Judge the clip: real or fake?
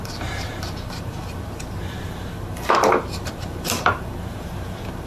fake